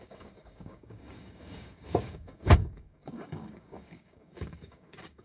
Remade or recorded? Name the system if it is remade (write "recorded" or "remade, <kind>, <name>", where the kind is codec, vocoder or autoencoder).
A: remade, codec, DAC